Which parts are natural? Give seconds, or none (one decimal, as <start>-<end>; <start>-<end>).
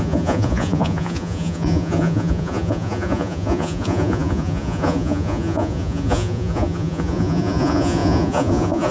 none